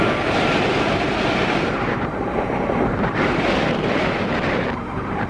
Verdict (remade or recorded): remade